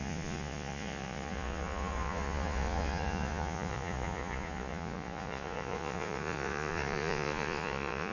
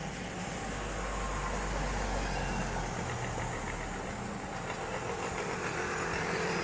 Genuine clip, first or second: second